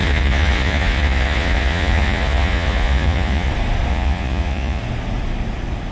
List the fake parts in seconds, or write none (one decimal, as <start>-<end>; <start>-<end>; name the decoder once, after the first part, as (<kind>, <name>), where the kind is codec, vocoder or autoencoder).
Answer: 0.0-3.5 (vocoder, Vocos); 3.9-4.8